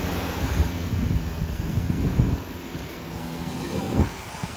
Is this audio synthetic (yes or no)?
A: yes